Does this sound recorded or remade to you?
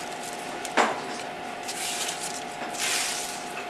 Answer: recorded